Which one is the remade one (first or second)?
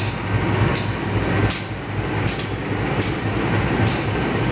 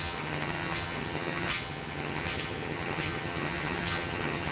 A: second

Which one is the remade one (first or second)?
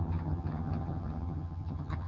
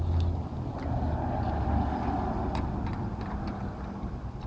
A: first